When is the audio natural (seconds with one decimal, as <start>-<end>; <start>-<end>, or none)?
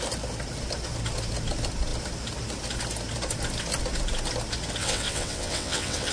0.0-4.8